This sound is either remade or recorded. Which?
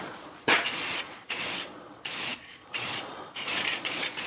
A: remade